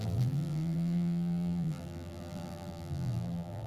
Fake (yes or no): yes